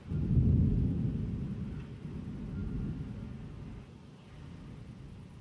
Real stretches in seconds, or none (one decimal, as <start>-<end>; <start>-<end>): 0.0-5.4